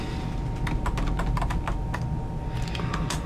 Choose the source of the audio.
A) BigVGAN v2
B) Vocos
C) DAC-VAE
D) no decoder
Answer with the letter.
D